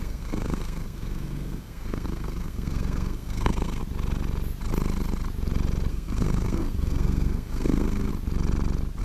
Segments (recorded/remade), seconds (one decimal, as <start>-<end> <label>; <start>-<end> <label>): 0.0-3.8 remade; 3.8-5.9 recorded; 5.9-8.1 remade; 8.1-9.0 recorded